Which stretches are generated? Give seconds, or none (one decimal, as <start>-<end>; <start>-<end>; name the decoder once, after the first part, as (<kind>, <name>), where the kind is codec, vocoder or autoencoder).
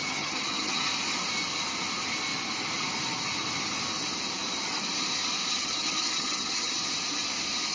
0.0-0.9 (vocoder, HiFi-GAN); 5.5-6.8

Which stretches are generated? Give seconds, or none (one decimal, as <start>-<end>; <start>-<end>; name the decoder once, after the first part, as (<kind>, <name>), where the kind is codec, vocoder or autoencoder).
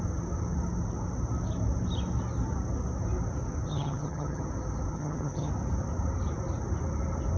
3.7-4.4 (vocoder, HiFi-GAN); 4.9-5.5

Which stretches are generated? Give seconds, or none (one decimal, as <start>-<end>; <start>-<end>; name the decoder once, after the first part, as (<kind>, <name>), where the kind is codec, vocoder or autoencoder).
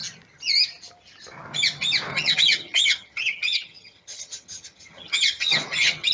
2.1-6.1 (vocoder, HiFi-GAN)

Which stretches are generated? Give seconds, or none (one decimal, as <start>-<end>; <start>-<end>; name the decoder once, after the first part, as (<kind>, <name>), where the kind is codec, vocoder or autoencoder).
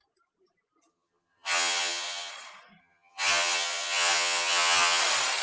0.9-2.3 (vocoder, HiFi-GAN); 2.8-5.0